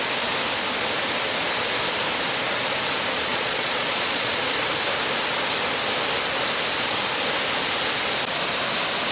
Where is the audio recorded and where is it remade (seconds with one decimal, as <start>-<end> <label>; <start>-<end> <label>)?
0.0-3.3 recorded; 3.3-4.3 remade; 4.3-9.1 recorded